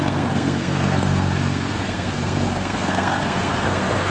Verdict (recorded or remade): remade